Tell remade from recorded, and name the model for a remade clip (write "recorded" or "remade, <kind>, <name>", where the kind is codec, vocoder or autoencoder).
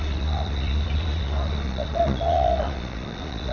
remade, vocoder, Vocos